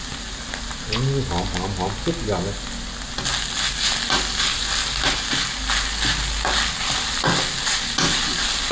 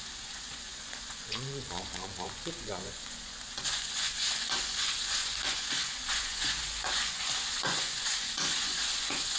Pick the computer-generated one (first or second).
second